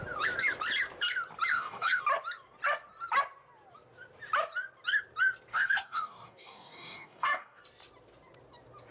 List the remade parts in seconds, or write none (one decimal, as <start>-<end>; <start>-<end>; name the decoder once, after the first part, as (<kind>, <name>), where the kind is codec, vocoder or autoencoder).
1.5-2.0 (codec, DAC); 5.5-7.6